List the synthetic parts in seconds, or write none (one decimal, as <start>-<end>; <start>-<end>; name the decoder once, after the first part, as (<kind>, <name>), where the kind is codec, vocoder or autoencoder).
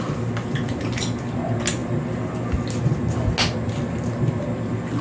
none